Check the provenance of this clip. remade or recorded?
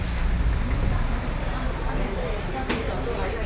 recorded